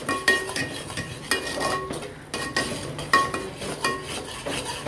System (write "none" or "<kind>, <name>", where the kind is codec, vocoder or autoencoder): none